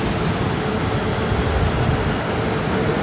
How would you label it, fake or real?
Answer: real